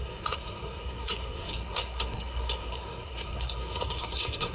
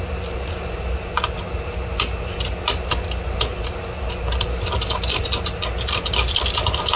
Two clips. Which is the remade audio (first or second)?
first